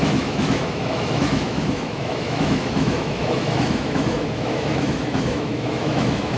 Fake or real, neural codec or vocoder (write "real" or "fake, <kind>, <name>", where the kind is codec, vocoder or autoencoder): fake, autoencoder, DAC-VAE